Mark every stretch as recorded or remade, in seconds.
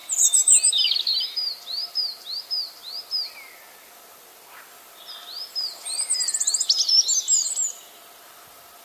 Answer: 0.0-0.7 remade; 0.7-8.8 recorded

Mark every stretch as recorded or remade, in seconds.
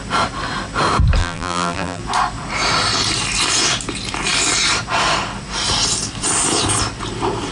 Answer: 0.0-1.2 recorded; 1.2-2.0 remade; 2.0-7.5 recorded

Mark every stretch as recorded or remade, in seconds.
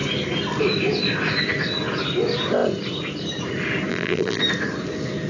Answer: 0.0-3.9 recorded; 3.9-4.4 remade; 4.4-5.3 recorded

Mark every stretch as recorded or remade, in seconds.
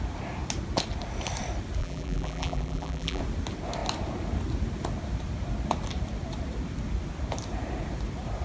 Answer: 0.0-1.8 recorded; 1.8-3.2 remade; 3.2-8.4 recorded